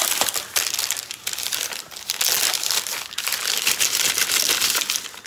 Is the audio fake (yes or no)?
no